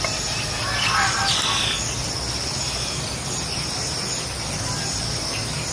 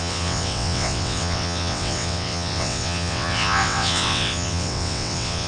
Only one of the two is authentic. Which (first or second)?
first